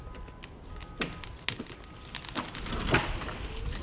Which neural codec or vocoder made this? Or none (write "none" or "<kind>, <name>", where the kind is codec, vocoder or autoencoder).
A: none